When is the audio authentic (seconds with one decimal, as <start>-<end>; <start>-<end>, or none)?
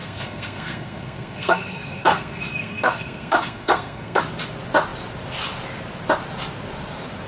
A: 4.2-7.3